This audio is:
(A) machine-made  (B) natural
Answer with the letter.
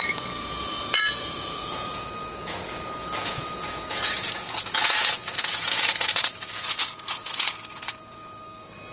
A